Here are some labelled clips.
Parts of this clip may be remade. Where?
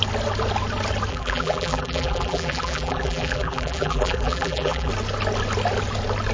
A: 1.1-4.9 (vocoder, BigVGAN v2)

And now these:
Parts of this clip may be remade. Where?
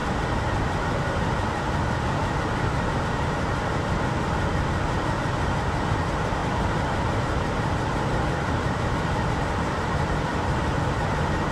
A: 6.4-11.5 (vocoder, BigVGAN v2)